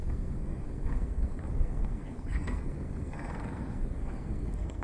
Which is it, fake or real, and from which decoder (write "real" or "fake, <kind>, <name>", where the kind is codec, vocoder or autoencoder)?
fake, codec, SNAC